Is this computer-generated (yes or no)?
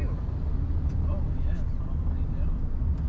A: no